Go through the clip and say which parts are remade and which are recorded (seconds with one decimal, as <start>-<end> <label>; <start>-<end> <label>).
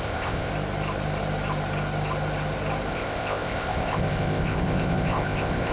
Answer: 0.0-0.5 remade; 0.5-2.9 recorded; 2.9-5.7 remade